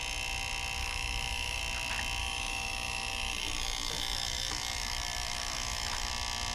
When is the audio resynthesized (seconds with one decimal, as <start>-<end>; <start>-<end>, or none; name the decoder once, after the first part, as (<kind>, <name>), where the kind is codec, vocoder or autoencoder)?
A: 0.8-1.6 (autoencoder, DAC-VAE); 2.2-6.1